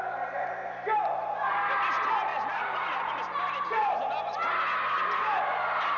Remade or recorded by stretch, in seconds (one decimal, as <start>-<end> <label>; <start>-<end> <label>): 0.0-2.3 recorded; 2.3-3.2 remade; 3.2-6.0 recorded